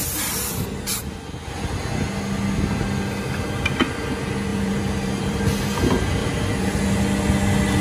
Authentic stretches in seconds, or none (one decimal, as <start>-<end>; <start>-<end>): 0.0-4.5; 5.4-6.2; 6.8-7.8